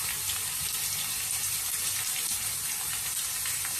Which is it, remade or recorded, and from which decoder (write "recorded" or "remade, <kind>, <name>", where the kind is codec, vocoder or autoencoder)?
recorded